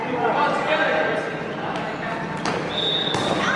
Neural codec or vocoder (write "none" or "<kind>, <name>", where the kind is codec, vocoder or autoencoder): none